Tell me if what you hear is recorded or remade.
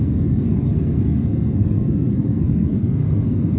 remade